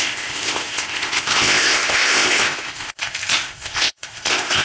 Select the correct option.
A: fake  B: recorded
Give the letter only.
A